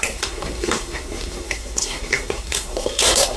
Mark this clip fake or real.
fake